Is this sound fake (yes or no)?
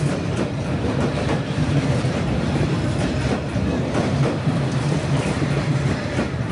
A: yes